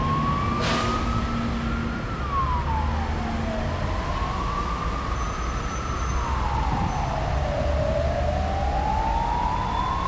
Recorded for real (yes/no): yes